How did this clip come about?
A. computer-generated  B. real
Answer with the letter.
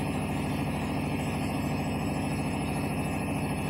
B